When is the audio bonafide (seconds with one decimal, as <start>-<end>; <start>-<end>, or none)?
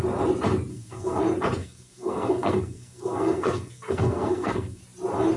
0.0-0.7; 1.2-1.6; 4.8-5.4